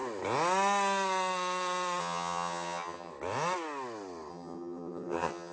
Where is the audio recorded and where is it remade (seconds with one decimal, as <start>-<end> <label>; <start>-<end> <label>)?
0.0-2.0 recorded; 2.0-3.1 remade; 3.1-4.3 recorded; 4.3-5.5 remade